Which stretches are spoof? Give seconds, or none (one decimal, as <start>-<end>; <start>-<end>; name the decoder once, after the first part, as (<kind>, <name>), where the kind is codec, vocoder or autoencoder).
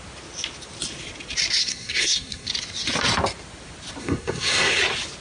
1.6-2.5 (codec, SNAC); 4.0-4.8